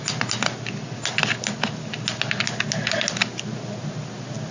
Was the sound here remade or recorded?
recorded